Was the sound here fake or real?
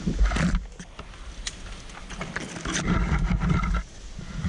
real